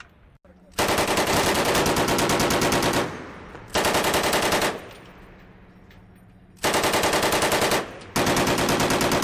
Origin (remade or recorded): recorded